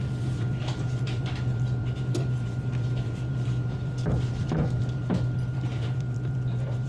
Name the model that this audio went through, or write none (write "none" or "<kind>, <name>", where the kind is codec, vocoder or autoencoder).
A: vocoder, BigVGAN v2